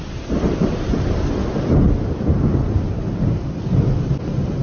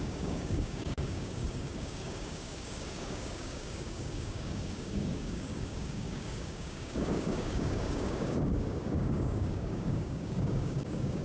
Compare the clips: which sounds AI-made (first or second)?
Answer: second